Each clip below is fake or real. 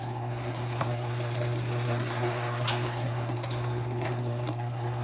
fake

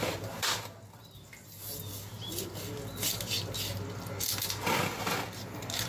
real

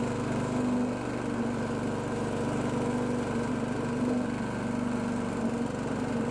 real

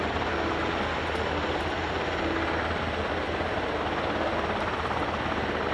real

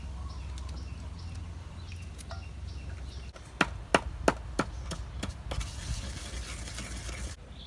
real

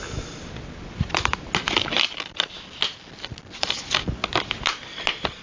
real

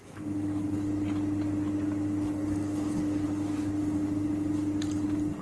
real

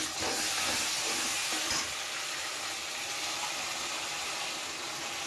real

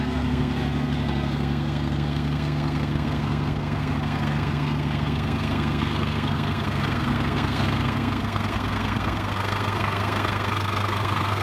fake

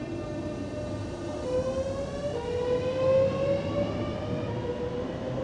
real